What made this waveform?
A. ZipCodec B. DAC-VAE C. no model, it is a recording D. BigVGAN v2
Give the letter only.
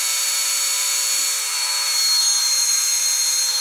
D